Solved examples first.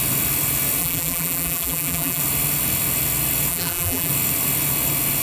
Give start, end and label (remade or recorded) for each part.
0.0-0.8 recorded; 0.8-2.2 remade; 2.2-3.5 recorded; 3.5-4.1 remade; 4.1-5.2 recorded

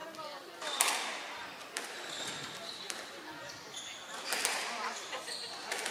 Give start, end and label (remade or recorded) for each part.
0.0-5.9 recorded